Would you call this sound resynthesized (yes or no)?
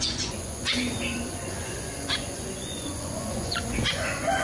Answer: yes